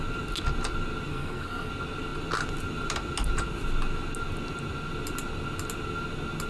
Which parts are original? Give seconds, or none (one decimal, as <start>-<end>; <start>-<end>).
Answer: 0.0-1.1; 1.7-6.5